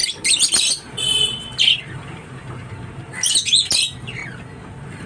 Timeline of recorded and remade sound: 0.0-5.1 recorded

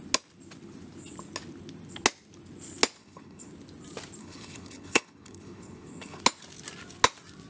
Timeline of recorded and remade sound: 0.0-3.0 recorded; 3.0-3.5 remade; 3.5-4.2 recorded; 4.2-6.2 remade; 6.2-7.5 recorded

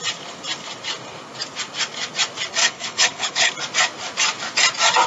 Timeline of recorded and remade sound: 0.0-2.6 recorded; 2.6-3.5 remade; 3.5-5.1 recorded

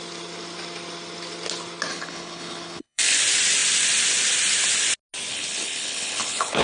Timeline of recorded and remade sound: 0.0-1.9 recorded; 1.9-3.2 remade; 3.2-5.3 recorded; 5.3-6.6 remade

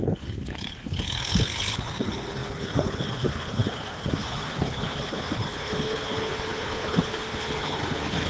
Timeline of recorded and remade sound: 0.0-8.3 remade